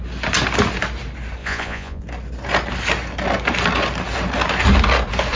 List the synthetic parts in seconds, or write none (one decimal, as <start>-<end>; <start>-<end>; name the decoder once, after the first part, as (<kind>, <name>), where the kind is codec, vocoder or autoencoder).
1.4-2.0 (vocoder, Vocos)